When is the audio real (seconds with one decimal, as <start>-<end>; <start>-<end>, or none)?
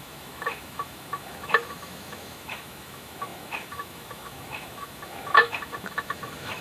none